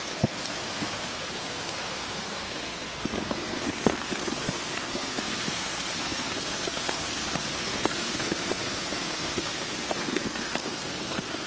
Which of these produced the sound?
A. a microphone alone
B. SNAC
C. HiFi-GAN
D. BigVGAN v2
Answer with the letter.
B